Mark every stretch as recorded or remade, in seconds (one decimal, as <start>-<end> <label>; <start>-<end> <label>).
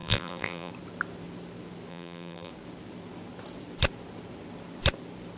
0.0-0.7 remade; 0.7-1.9 recorded; 1.9-2.5 remade; 2.5-5.4 recorded